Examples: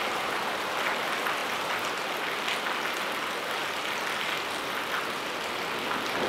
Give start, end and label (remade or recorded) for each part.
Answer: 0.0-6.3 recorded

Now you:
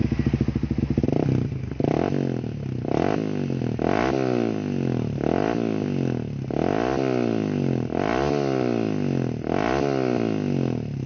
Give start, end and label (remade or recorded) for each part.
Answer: 0.0-11.1 recorded

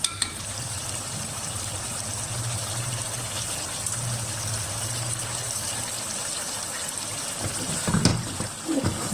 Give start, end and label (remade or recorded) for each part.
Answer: 0.0-8.1 remade; 8.1-9.1 recorded

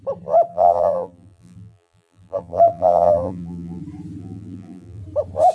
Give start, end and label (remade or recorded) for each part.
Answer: 0.0-0.5 recorded; 0.5-3.8 remade; 3.8-4.2 recorded; 4.2-5.0 remade; 5.0-5.5 recorded